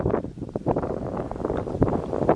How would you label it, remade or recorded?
remade